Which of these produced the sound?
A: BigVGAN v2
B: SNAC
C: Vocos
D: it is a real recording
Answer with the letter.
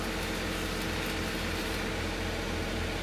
D